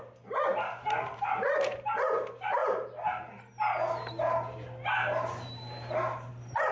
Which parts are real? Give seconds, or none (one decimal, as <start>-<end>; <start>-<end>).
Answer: 0.0-6.7